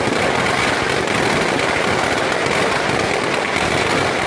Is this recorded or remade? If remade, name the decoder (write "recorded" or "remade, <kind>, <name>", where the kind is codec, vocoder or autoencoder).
recorded